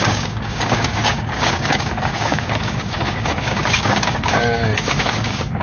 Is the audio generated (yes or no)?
yes